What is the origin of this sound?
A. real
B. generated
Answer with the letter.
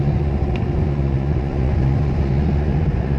B